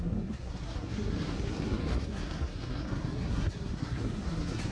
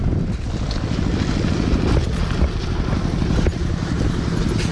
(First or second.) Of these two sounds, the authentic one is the second